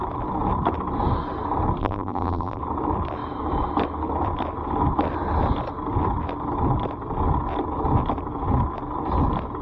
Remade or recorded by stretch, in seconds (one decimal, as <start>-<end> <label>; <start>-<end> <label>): 0.0-1.8 recorded; 1.8-2.6 remade; 2.6-9.6 recorded

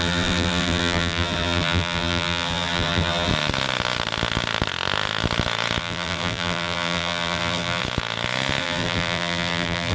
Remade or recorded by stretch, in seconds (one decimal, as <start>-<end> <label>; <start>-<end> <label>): 0.0-3.3 remade; 3.3-5.8 recorded; 5.8-7.8 remade; 7.8-8.6 recorded; 8.6-9.9 remade

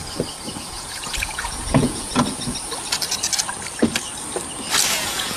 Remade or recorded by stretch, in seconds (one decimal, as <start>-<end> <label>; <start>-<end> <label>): 0.0-0.6 recorded; 0.6-2.1 remade; 2.1-4.9 recorded; 4.9-5.4 remade

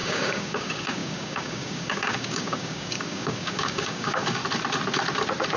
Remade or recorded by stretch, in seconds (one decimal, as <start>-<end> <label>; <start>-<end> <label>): 0.0-4.4 remade; 4.4-5.6 recorded

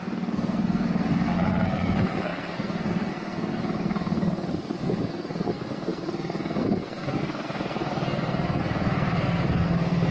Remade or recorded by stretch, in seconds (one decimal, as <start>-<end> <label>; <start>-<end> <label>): 0.0-10.1 remade

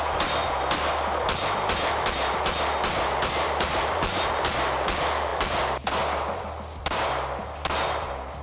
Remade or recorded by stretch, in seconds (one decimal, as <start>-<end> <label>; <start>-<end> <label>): 0.0-8.4 recorded